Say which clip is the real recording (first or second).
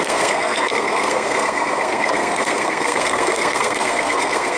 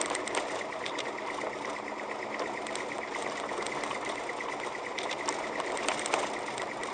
second